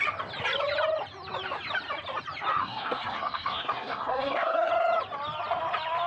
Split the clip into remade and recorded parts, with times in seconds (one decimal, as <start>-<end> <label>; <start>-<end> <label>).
0.0-2.6 recorded; 2.6-4.7 remade; 4.7-6.1 recorded